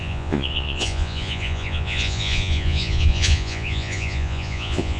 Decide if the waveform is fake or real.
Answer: fake